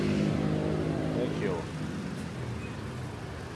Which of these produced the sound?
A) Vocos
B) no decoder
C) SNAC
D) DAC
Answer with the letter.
B